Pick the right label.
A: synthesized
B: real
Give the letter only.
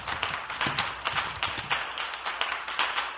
B